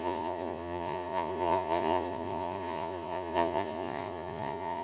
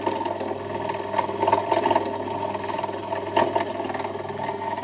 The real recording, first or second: second